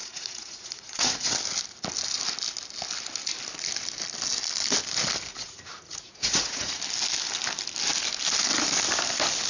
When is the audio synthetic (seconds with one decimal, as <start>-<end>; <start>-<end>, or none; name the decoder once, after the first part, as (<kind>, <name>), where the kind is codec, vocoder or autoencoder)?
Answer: 0.0-1.3 (vocoder, Vocos); 5.3-6.8

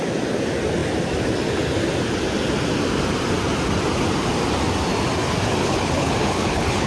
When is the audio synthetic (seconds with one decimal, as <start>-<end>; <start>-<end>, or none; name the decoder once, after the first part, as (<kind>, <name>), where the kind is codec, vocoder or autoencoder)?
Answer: 5.6-6.9 (codec, HILCodec)

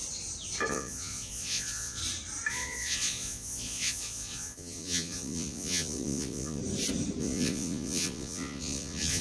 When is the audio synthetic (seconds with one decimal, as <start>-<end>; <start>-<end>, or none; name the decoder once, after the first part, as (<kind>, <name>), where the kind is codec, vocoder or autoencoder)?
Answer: 0.7-2.0 (vocoder, Vocos); 2.5-6.6; 7.2-9.2

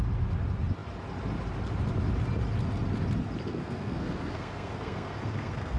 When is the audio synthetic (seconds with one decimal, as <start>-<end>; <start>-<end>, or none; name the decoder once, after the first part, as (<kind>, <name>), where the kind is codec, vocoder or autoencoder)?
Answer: 3.5-5.8 (codec, SNAC)